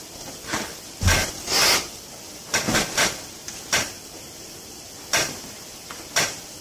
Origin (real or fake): real